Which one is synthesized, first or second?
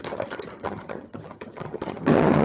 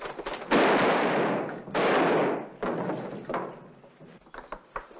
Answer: first